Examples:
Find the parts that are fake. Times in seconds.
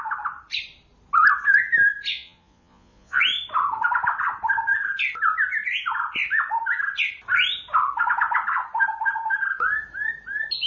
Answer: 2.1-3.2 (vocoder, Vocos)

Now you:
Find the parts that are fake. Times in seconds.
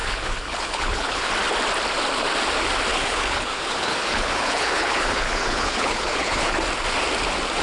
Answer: 0.0-1.3 (codec, HILCodec); 2.9-6.6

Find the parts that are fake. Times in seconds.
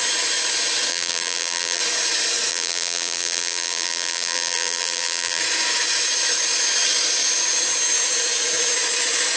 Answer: 0.9-1.8 (vocoder, BigVGAN v2); 2.5-5.4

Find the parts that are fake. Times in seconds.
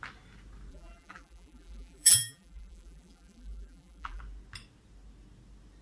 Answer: 0.7-4.2 (vocoder, BigVGAN v2)